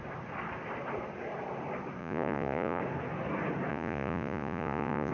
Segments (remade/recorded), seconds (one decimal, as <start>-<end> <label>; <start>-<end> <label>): 0.0-2.0 recorded; 2.0-2.8 remade; 2.8-3.7 recorded; 3.7-5.1 remade

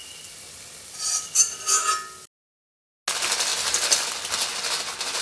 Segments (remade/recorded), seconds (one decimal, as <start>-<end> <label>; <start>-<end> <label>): 0.0-5.2 recorded